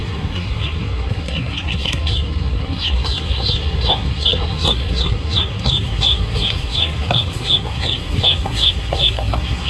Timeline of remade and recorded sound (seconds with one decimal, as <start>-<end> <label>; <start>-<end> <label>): 0.0-9.7 remade

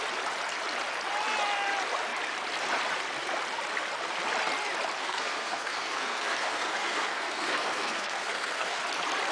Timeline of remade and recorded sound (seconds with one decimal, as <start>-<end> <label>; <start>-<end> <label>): 0.0-5.0 recorded; 5.0-8.8 remade; 8.8-9.3 recorded

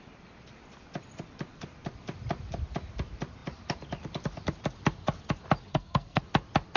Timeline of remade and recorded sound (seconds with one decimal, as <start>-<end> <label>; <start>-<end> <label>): 0.0-5.7 recorded; 5.7-6.2 remade; 6.2-6.8 recorded